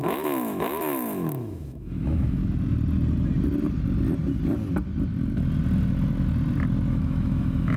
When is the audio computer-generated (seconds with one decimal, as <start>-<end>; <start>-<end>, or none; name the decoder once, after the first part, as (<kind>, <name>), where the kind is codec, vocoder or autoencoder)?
0.0-2.4 (autoencoder, DAC-VAE); 6.9-7.8